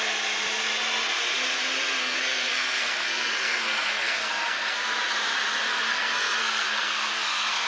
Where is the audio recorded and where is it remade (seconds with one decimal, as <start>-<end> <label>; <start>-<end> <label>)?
0.0-2.0 recorded; 2.0-4.8 remade; 4.8-5.9 recorded; 5.9-7.7 remade